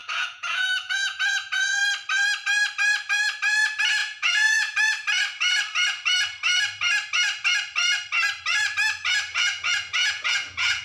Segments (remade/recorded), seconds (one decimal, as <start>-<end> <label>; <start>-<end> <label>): 0.0-1.8 remade; 1.8-4.0 recorded; 4.0-4.8 remade; 4.8-9.3 recorded; 9.3-10.8 remade